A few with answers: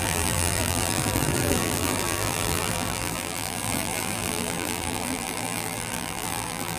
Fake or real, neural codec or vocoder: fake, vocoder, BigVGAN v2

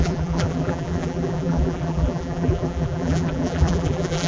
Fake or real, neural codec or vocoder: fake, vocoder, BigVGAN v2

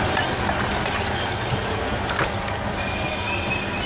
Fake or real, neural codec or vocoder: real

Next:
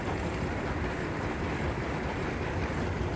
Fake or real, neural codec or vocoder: fake, vocoder, BigVGAN v2